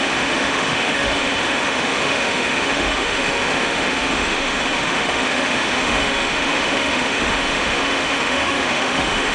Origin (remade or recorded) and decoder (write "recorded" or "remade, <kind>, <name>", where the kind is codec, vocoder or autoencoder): remade, autoencoder, DAC-VAE